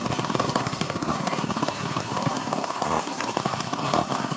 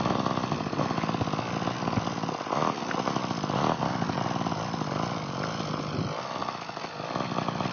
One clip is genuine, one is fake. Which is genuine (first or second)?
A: second